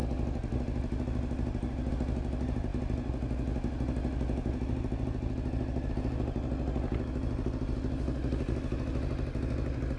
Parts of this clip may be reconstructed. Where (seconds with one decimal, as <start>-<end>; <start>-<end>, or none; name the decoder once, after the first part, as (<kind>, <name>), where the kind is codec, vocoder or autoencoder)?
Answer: none

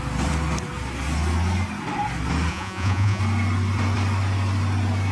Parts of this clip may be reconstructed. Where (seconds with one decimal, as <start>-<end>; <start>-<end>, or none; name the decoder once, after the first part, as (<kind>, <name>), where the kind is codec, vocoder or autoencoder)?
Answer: 2.5-3.2 (vocoder, Vocos)

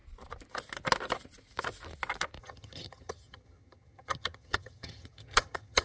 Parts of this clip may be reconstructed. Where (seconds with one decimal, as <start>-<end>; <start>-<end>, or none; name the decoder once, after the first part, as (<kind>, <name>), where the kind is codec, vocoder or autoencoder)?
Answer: 2.4-5.8 (vocoder, HiFi-GAN)

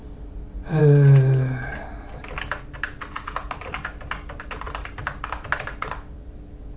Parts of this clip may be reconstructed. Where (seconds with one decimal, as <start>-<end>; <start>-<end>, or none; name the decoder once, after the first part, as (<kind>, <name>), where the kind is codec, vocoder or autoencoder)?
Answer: none

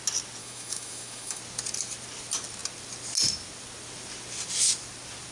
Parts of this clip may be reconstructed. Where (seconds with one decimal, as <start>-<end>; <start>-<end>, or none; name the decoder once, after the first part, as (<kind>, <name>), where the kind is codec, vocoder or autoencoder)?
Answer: 0.4-1.4 (autoencoder, DAC-VAE)

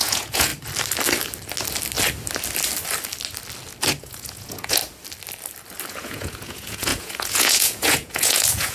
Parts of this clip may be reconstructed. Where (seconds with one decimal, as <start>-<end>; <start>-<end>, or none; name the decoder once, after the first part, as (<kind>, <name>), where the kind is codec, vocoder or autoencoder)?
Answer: 0.0-0.5 (vocoder, Vocos); 4.0-4.8; 5.9-8.7

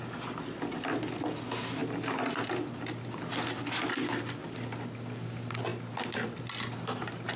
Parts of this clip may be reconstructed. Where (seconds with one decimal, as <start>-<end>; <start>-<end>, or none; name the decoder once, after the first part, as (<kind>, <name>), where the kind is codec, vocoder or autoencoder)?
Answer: 1.8-3.3 (vocoder, BigVGAN v2); 5.7-6.4

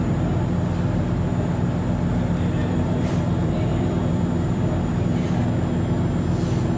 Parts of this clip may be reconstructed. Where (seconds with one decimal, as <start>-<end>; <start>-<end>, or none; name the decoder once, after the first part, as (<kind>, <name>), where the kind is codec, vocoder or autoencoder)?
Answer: 2.6-5.4 (vocoder, BigVGAN v2)